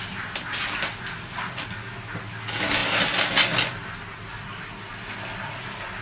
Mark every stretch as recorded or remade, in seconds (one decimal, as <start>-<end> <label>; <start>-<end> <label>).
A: 0.0-6.0 recorded